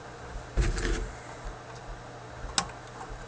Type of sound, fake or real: real